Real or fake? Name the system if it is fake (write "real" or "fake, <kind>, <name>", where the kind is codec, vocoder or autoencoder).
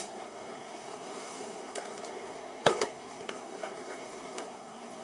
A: fake, codec, SNAC